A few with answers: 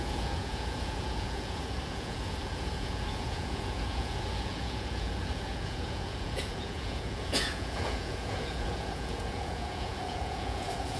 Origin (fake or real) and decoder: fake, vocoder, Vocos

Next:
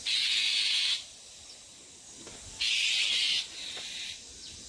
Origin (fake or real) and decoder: real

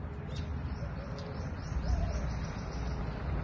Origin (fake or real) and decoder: real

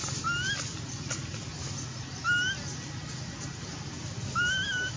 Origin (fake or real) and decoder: real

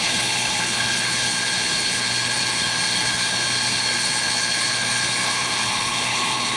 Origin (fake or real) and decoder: fake, codec, HILCodec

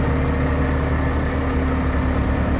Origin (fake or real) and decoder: real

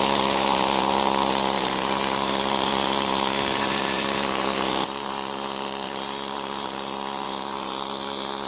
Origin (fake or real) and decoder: fake, vocoder, BigVGAN v2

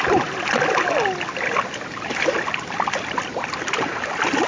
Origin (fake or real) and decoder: real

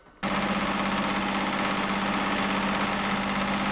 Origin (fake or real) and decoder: real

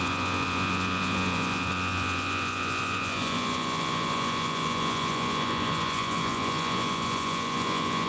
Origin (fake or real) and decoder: fake, vocoder, Vocos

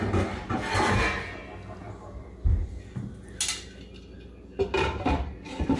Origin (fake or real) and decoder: real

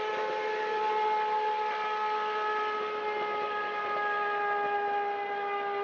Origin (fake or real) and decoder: real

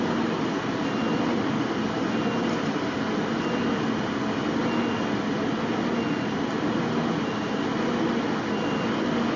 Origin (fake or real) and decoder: real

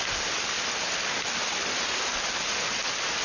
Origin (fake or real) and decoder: real